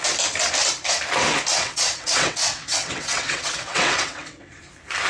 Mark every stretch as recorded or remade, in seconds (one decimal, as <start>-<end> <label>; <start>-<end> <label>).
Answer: 0.0-1.5 recorded; 1.5-4.6 remade; 4.6-5.1 recorded